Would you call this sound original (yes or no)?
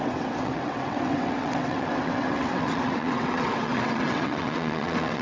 no